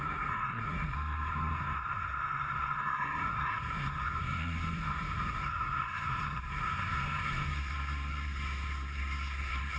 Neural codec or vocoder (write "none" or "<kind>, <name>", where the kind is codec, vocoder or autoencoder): codec, SNAC